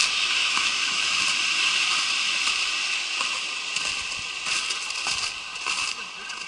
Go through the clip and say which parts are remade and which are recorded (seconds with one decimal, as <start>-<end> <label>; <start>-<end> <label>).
0.0-0.4 recorded; 0.4-1.2 remade; 1.2-6.5 recorded